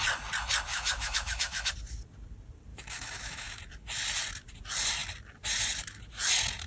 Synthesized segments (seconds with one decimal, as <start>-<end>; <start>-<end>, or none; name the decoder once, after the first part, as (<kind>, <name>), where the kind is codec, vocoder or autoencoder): 0.7-1.7 (autoencoder, DAC-VAE); 2.7-3.6